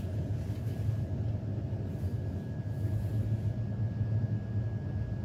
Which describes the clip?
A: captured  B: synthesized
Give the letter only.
A